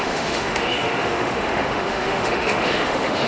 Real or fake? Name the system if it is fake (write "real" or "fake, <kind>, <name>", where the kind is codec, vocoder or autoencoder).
fake, autoencoder, DAC-VAE